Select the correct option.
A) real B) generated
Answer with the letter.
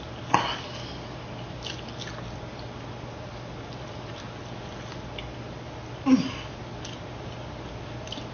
A